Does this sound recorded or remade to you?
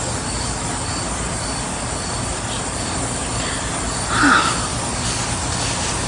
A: recorded